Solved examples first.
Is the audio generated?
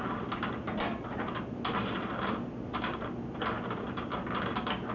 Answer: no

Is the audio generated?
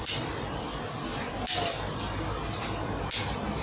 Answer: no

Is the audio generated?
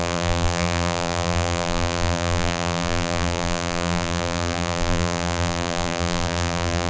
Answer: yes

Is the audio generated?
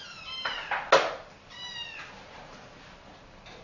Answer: no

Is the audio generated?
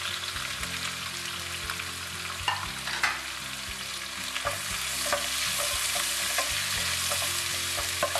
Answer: no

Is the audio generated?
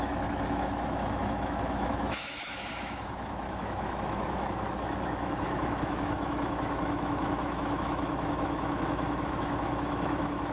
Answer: yes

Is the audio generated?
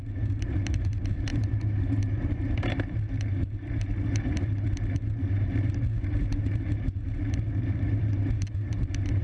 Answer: yes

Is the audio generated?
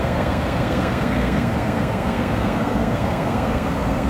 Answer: yes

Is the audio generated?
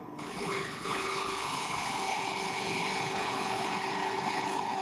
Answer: yes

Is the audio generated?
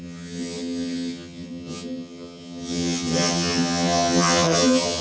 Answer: yes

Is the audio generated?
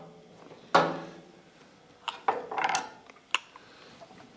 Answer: no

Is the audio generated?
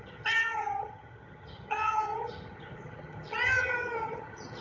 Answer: yes